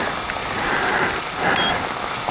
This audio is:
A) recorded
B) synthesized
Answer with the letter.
A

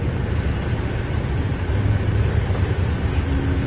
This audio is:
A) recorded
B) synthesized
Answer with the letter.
A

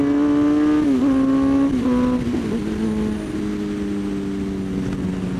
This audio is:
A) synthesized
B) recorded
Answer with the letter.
B